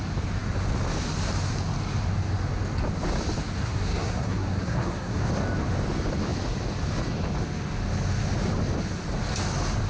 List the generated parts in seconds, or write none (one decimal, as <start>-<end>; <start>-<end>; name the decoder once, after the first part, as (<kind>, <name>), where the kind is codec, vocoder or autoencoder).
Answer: 3.6-5.3 (codec, SNAC)